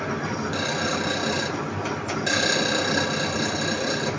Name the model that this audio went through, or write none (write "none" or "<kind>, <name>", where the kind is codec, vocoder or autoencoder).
none